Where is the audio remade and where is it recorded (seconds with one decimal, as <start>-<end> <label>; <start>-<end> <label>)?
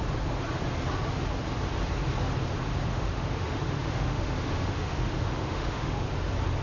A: 0.0-2.9 recorded; 2.9-6.1 remade; 6.1-6.6 recorded